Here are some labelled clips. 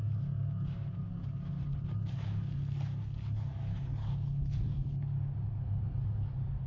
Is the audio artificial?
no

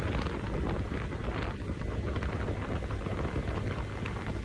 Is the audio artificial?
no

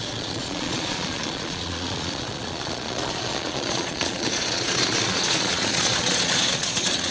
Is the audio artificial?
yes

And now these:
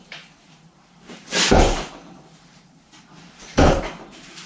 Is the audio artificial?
yes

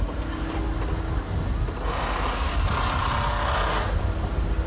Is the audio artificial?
no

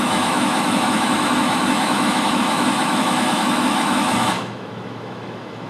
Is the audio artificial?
yes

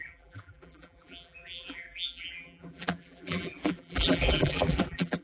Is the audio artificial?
yes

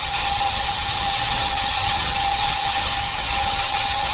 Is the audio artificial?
yes